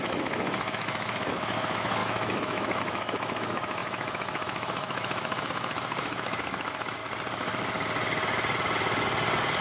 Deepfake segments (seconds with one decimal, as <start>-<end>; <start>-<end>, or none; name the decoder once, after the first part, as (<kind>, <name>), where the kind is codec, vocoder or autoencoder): 0.0-7.0 (autoencoder, DAC-VAE)